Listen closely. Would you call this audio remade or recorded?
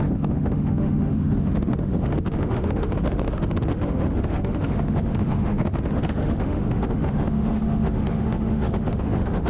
remade